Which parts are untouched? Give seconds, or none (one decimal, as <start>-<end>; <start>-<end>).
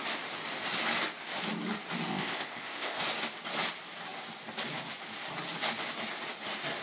0.0-2.1; 3.0-6.8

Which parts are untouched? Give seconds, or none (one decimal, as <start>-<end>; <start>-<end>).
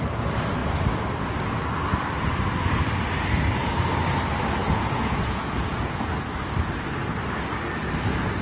0.0-4.6; 6.1-8.4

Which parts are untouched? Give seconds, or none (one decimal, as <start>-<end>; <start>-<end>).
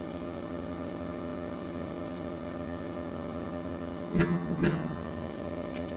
none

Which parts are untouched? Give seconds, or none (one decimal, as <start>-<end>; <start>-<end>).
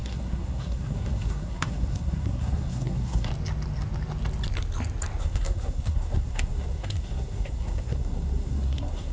3.3-5.2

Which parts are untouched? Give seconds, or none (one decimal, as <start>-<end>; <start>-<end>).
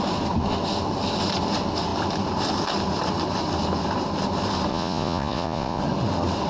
0.0-4.7; 5.8-6.5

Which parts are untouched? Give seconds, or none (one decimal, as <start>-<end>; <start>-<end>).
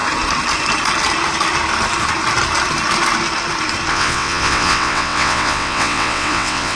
0.0-3.9